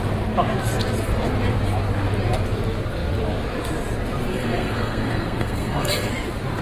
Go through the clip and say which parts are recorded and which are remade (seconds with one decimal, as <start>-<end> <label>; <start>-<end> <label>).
0.0-4.3 recorded; 4.3-6.1 remade; 6.1-6.6 recorded